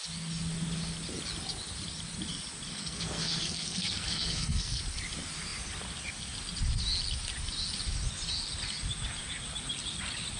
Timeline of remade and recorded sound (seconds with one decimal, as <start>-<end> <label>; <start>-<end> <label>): 0.0-2.7 recorded; 2.7-4.8 remade; 4.8-10.4 recorded